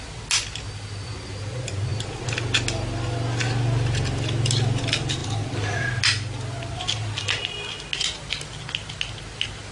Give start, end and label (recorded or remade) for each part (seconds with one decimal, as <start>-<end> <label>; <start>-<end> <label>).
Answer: 0.0-9.7 recorded